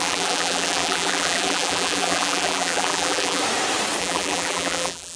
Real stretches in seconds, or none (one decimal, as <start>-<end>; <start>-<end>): 3.4-4.0